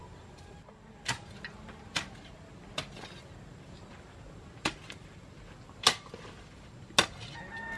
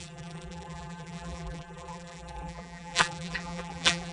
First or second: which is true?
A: first